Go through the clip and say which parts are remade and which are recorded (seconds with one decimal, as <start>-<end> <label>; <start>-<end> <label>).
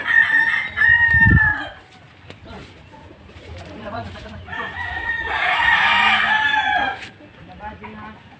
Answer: 0.0-2.4 recorded; 2.4-5.8 remade; 5.8-8.4 recorded